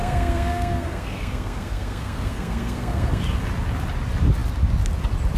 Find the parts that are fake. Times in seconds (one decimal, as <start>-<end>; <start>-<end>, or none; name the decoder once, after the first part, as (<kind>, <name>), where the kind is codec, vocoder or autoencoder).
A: 0.0-3.2 (codec, SNAC)